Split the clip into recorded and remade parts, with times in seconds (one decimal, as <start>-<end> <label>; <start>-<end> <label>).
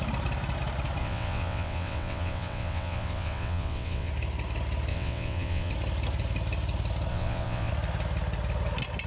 0.0-1.0 recorded; 1.0-4.1 remade; 4.1-4.9 recorded; 4.9-5.7 remade; 5.7-7.1 recorded; 7.1-7.7 remade; 7.7-9.1 recorded